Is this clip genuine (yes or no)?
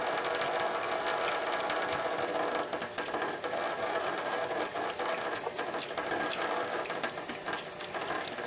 yes